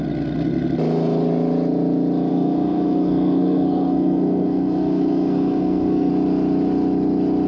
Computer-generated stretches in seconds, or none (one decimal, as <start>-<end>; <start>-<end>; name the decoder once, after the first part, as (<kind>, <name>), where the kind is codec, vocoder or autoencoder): 2.3-6.1 (codec, SNAC)